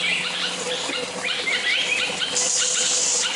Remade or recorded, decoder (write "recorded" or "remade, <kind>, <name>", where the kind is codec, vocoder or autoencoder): recorded